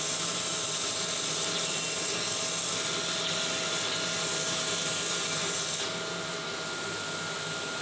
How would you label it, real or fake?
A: real